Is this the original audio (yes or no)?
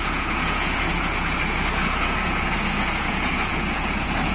no